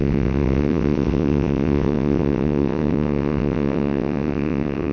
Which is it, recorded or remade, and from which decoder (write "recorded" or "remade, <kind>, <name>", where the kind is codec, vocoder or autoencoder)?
remade, vocoder, WaveNeXt